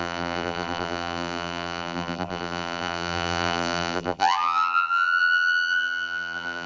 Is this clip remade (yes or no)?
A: yes